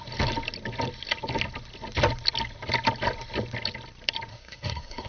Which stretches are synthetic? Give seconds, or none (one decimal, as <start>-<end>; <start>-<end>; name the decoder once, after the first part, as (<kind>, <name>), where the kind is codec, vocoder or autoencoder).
4.3-5.1 (codec, SNAC)

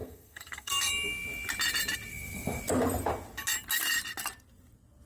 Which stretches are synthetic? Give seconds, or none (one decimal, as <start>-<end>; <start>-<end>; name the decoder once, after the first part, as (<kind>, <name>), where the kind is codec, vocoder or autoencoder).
0.0-0.9 (codec, SNAC); 2.1-2.6

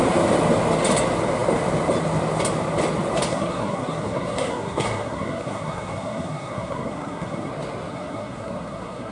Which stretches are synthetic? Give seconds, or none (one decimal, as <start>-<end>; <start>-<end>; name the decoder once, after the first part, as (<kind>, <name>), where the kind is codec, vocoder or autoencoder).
3.3-7.5 (codec, SNAC); 7.9-9.1